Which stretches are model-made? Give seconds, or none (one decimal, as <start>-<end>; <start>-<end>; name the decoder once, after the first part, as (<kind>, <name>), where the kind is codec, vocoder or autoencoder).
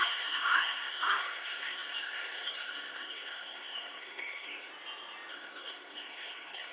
0.0-4.7 (codec, SNAC); 5.3-6.7